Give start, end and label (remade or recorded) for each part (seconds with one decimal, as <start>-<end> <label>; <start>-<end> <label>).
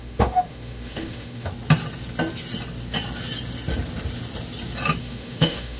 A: 0.0-1.5 remade; 1.5-5.0 recorded; 5.0-5.8 remade